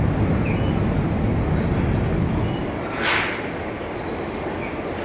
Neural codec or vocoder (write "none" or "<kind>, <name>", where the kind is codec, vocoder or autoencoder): none